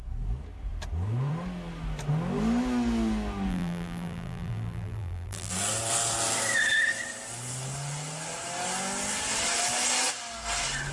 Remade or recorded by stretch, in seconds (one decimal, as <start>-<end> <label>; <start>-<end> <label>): 0.0-3.5 recorded; 3.5-5.5 remade; 5.5-10.9 recorded